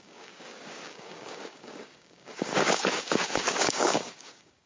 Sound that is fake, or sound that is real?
fake